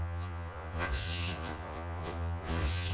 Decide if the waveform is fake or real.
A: fake